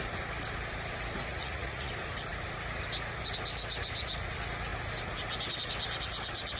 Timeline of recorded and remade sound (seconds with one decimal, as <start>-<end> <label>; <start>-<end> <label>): 0.0-1.3 recorded; 1.3-1.9 remade; 1.9-6.6 recorded